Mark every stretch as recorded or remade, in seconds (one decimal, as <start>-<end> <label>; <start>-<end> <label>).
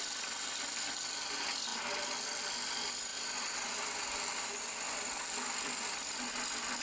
0.0-6.8 recorded